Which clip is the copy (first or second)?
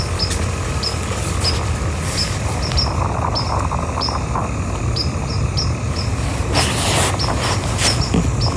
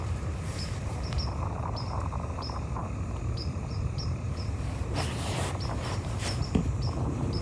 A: second